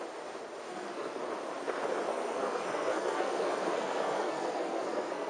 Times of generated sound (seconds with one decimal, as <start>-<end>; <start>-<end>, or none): 0.7-1.2; 2.1-5.3